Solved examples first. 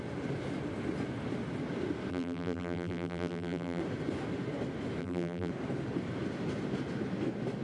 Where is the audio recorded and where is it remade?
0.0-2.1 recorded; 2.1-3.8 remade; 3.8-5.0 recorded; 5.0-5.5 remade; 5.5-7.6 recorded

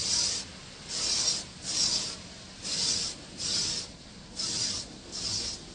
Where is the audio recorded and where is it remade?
0.0-5.7 recorded

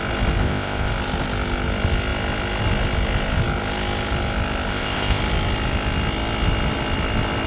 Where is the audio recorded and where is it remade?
0.0-0.4 recorded; 0.4-0.9 remade; 0.9-4.7 recorded; 4.7-5.2 remade; 5.2-7.5 recorded

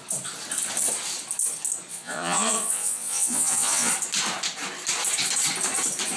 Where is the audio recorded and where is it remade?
0.0-1.9 recorded; 1.9-3.9 remade; 3.9-6.2 recorded

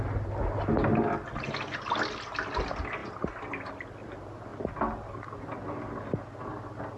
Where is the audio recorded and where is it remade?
0.0-7.0 recorded